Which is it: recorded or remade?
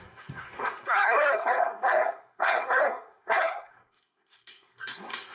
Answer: remade